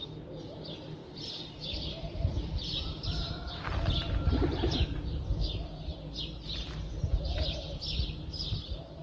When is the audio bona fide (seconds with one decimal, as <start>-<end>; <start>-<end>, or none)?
0.0-1.0; 3.5-9.0